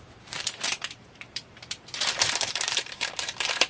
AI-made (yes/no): yes